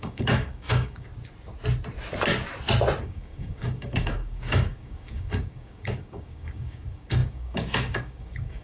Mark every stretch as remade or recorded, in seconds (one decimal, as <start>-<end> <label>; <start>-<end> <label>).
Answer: 0.0-1.1 remade; 1.1-3.0 recorded; 3.0-8.6 remade